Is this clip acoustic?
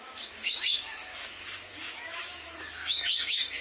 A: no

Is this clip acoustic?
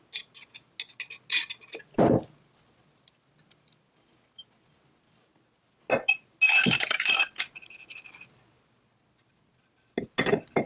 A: yes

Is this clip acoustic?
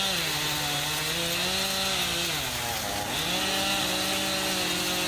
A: yes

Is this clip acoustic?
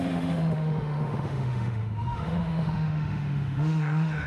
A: no